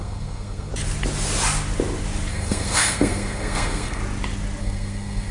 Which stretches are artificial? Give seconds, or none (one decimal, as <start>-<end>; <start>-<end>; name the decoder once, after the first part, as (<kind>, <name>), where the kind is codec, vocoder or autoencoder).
0.0-0.7 (codec, SNAC); 2.3-4.0; 4.6-5.3